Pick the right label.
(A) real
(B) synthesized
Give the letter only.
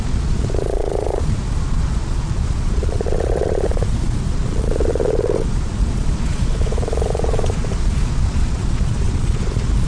B